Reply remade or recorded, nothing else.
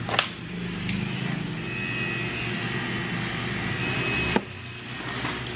recorded